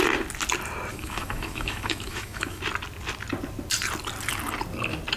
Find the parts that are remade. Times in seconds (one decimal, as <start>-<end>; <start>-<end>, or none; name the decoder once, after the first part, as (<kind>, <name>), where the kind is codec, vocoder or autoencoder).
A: 0.9-2.6 (autoencoder, DAC-VAE)